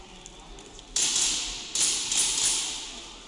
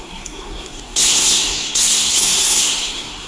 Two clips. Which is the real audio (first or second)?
first